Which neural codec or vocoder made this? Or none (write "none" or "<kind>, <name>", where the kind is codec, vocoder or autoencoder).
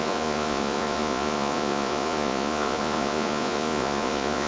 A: vocoder, Vocos